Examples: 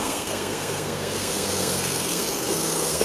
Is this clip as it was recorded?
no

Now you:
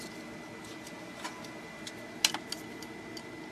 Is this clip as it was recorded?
yes